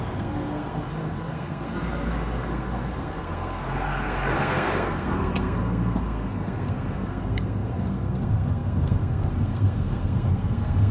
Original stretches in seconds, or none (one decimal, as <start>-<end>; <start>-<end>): none